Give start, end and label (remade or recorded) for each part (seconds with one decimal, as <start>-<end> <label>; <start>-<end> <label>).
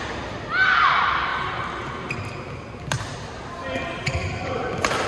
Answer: 0.0-3.1 recorded; 3.1-5.1 remade